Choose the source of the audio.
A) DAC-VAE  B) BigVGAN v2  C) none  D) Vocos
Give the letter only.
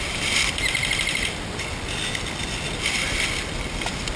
C